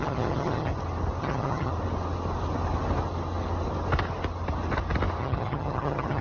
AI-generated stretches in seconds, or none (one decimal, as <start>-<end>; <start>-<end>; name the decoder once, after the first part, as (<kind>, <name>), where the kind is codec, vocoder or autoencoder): 0.0-0.7 (vocoder, HiFi-GAN); 1.2-1.7; 5.2-6.2